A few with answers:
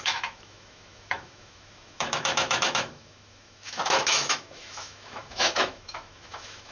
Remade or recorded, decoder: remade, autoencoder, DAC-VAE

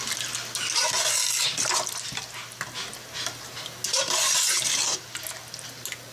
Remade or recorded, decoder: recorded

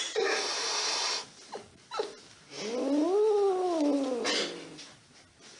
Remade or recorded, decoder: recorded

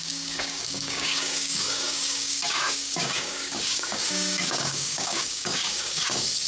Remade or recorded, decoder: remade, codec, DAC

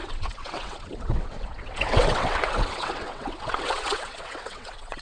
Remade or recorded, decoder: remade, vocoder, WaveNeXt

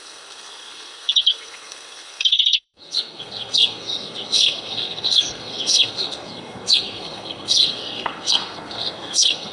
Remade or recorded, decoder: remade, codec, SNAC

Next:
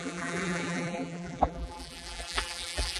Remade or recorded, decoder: remade, vocoder, BigVGAN v2